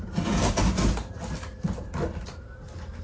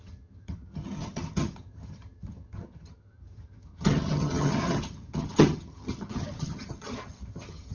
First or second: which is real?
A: first